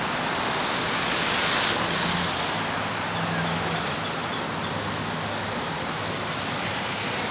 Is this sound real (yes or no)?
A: yes